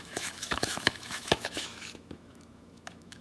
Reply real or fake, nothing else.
fake